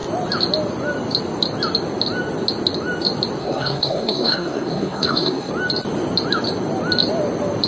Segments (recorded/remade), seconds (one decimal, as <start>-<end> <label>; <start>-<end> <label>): 0.0-3.4 recorded; 3.4-5.5 remade; 5.5-7.7 recorded